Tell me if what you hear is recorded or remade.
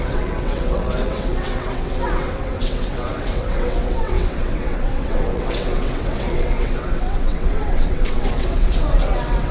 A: remade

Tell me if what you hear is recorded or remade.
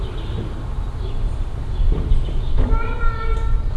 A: recorded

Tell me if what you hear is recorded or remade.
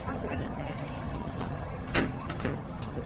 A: remade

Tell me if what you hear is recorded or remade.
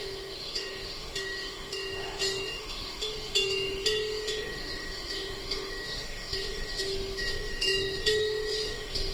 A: remade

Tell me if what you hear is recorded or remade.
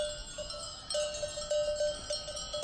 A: recorded